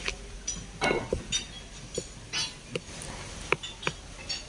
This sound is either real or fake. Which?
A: real